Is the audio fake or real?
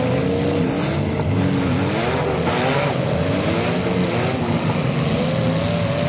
real